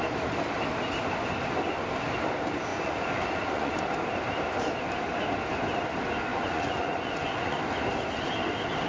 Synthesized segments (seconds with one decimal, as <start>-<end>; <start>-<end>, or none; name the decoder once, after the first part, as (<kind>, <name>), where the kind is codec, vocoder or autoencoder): 2.7-3.8 (vocoder, Vocos); 6.3-7.6